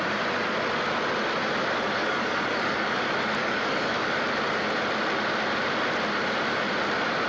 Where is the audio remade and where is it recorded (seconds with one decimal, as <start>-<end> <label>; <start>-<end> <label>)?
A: 0.0-2.0 recorded; 2.0-3.0 remade; 3.0-3.4 recorded; 3.4-4.1 remade; 4.1-7.3 recorded